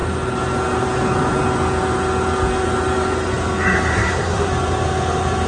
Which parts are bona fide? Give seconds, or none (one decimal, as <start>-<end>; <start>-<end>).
0.0-3.9; 4.5-5.5